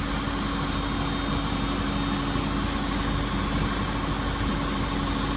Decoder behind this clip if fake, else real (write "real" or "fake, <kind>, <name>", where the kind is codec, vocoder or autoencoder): real